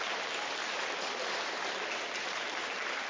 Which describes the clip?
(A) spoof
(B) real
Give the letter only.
B